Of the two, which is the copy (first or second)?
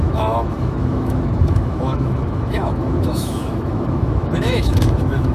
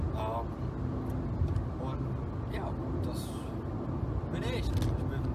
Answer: first